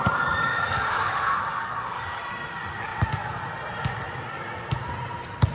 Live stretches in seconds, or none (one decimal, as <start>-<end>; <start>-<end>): 0.0-0.5; 2.2-5.5